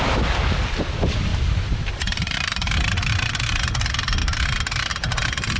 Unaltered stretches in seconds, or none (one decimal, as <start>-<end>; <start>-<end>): 0.0-1.3; 2.7-4.2; 4.9-5.6